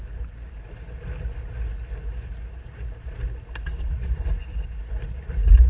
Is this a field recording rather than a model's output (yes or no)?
yes